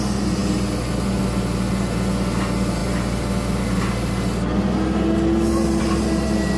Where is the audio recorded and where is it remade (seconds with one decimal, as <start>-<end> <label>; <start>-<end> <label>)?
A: 0.0-6.6 recorded